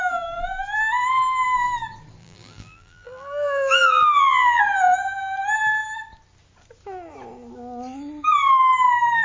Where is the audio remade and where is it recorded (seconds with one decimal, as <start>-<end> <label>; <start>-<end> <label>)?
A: 0.0-2.2 recorded; 2.2-4.6 remade; 4.6-9.2 recorded